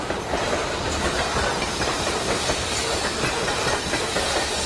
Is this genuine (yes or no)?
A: no